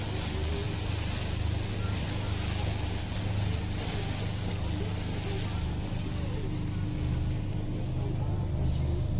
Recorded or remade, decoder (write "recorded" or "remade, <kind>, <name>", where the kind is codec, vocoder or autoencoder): recorded